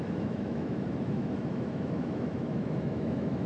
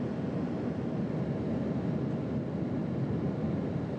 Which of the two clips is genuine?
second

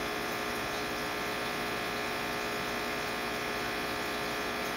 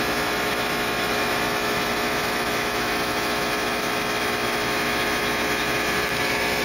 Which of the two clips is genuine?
first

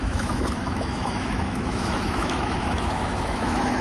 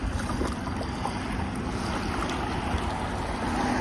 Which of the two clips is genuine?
second